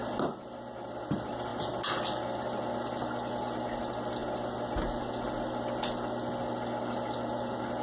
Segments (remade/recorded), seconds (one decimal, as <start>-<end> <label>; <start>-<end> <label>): 0.0-7.8 recorded